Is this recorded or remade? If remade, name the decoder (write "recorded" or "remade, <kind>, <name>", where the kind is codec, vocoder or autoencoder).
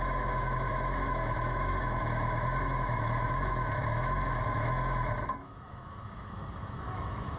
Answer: remade, autoencoder, DAC-VAE